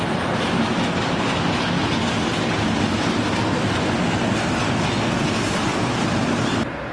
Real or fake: real